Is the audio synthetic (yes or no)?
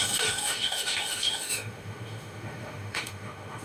yes